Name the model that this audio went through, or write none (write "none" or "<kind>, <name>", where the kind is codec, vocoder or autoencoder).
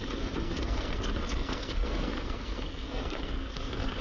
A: codec, SNAC